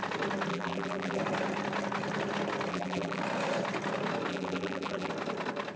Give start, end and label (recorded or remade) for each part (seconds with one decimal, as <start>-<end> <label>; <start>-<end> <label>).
0.0-0.5 recorded; 0.5-1.2 remade; 1.2-2.7 recorded; 2.7-3.2 remade; 3.2-4.3 recorded; 4.3-5.1 remade; 5.1-5.8 recorded